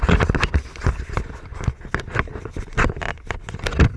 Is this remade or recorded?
recorded